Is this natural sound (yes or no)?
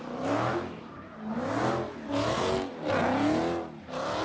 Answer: yes